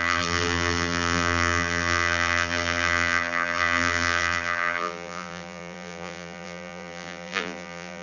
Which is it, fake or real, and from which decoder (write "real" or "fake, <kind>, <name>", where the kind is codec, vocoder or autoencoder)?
fake, vocoder, BigVGAN v2